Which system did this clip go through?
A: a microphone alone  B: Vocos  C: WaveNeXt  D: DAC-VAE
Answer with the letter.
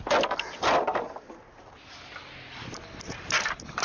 A